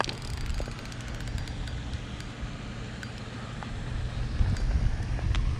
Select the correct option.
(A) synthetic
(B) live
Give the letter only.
B